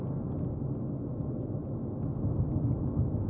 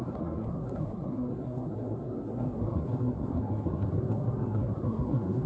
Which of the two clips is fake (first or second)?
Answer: second